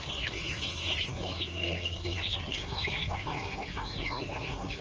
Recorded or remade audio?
remade